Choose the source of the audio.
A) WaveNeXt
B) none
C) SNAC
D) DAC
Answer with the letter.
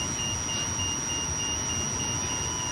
B